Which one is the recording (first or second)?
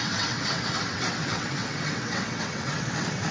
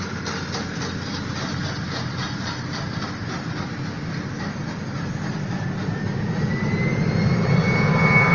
second